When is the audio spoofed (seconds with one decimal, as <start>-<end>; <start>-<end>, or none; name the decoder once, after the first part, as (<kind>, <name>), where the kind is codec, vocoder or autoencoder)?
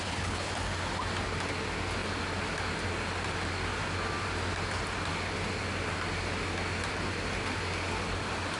0.0-0.5 (codec, HILCodec)